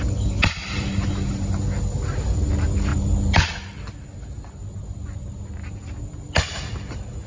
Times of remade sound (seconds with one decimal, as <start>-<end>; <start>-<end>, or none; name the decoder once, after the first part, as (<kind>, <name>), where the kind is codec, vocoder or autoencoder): none